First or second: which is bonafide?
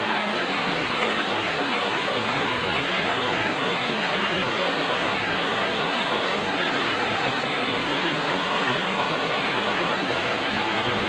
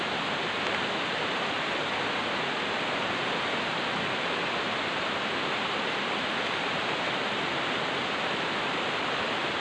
second